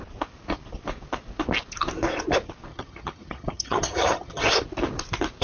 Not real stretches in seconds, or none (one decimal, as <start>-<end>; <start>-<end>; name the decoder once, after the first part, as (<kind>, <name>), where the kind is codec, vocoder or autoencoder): 2.7-4.4 (vocoder, HiFi-GAN)